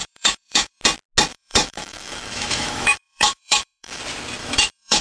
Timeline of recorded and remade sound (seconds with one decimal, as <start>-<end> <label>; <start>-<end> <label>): 0.0-0.8 remade; 0.8-1.3 recorded; 1.3-4.0 remade; 4.0-4.4 recorded; 4.4-5.0 remade